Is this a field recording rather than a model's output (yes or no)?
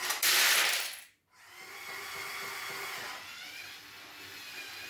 yes